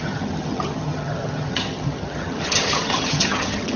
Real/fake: fake